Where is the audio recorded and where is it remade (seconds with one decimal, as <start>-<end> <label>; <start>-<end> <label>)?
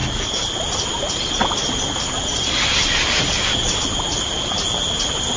0.0-5.4 recorded